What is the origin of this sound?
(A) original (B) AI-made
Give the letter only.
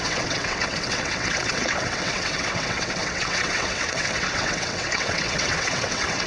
B